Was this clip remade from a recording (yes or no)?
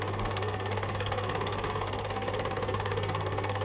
yes